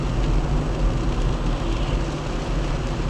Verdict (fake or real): real